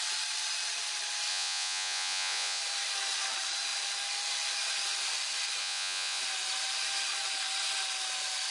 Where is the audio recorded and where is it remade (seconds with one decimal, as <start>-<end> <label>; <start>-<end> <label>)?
0.0-1.3 recorded; 1.3-2.6 remade; 2.6-5.6 recorded; 5.6-6.2 remade; 6.2-8.5 recorded